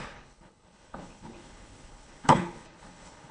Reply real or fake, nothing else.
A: fake